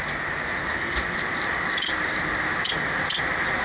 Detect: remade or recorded recorded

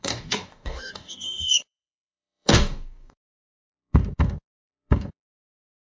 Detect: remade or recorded remade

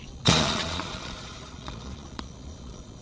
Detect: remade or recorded remade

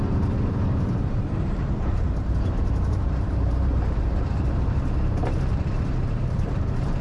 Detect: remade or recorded remade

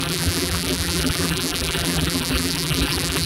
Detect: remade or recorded remade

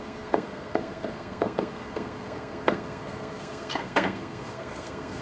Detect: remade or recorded remade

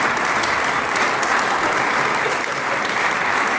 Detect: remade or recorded recorded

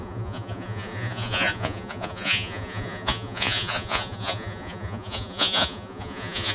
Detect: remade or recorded remade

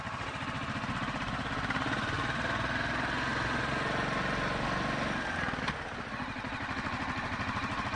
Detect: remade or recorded recorded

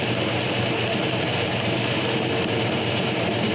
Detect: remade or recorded recorded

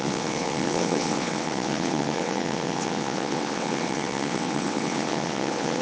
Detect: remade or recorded remade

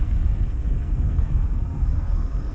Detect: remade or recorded remade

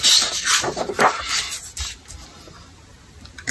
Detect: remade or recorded recorded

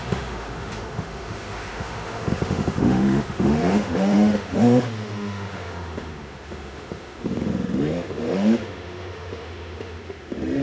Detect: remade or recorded remade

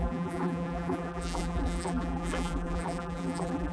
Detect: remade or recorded remade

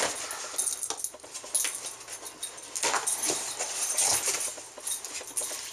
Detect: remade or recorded recorded